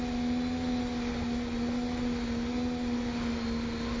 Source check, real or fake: real